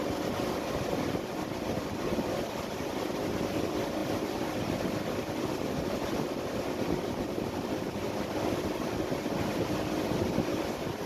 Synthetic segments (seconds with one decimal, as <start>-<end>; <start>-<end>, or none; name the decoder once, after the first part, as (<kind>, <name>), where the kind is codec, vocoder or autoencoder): 0.0-11.1 (vocoder, BigVGAN v2)